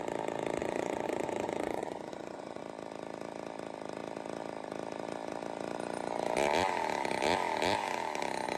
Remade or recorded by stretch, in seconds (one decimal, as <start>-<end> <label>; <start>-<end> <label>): 0.0-0.6 recorded; 0.6-2.6 remade; 2.6-8.6 recorded